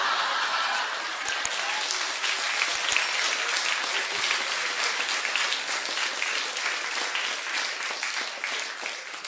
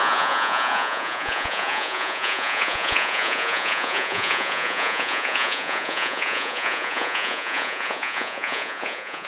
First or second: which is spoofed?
second